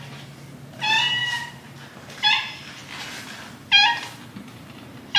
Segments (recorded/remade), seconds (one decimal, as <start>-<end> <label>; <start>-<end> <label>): 0.0-1.2 recorded; 1.2-2.8 remade; 2.8-4.5 recorded; 4.5-5.2 remade